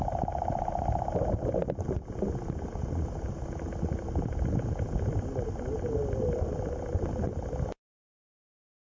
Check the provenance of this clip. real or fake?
real